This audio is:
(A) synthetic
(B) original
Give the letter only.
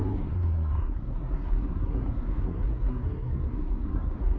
A